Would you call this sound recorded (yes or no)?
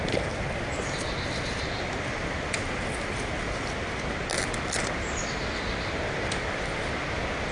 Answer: yes